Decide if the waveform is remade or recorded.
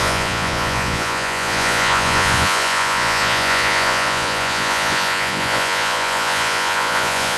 remade